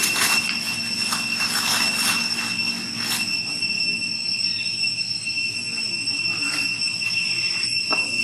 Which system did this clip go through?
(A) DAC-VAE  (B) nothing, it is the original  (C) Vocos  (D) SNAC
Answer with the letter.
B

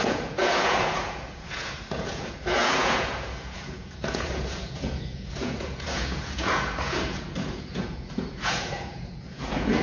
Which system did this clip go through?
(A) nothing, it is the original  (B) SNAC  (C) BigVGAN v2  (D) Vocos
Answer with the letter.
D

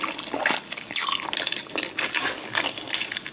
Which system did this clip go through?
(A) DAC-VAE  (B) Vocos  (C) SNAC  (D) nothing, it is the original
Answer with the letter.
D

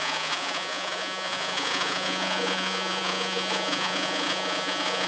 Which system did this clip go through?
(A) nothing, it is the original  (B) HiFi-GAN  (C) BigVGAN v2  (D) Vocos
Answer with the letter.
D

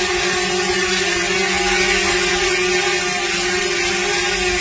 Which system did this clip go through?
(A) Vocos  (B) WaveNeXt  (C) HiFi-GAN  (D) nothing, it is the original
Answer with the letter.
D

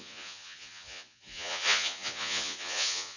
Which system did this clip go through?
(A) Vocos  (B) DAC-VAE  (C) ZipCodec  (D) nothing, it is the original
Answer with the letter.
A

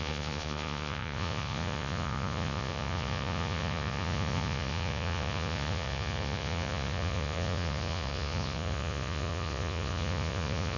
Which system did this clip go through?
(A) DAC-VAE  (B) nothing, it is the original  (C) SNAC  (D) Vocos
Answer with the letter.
D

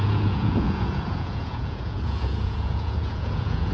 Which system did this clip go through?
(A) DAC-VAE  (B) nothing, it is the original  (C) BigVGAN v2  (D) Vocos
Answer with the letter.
D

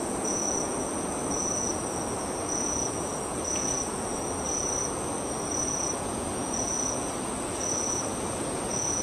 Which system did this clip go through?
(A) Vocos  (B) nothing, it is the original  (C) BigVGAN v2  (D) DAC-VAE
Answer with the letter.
A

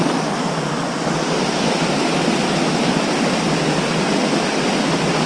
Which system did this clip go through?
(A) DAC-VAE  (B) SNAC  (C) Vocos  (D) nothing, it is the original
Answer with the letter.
D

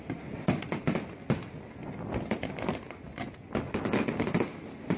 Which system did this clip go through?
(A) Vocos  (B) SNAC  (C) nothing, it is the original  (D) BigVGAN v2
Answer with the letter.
C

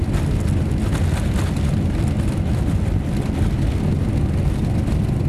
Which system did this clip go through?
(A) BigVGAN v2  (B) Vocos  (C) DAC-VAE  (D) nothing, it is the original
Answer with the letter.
D